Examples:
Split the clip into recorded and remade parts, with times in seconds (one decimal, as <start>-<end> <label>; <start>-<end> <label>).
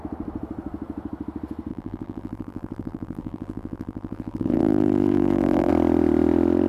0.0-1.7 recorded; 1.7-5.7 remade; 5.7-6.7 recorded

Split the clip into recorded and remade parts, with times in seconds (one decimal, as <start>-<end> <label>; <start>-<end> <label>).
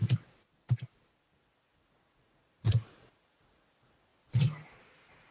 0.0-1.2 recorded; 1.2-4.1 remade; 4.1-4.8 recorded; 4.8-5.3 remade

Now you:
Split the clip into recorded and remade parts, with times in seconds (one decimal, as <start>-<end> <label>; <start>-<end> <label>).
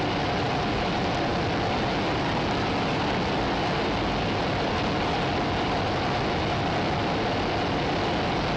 0.0-8.6 recorded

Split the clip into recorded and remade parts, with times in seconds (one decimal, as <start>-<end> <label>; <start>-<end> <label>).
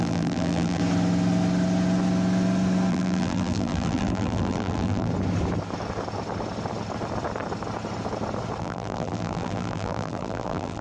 0.0-0.8 remade; 0.8-2.9 recorded; 2.9-5.1 remade; 5.1-8.6 recorded; 8.6-10.8 remade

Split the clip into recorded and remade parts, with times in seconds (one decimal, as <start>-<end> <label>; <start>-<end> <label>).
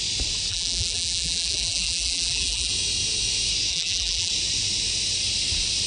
0.0-0.5 recorded; 0.5-2.7 remade; 2.7-3.7 recorded; 3.7-4.3 remade; 4.3-5.9 recorded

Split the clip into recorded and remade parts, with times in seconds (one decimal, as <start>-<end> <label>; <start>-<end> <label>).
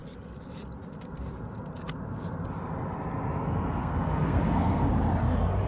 0.0-3.8 recorded; 3.8-4.9 remade; 4.9-5.7 recorded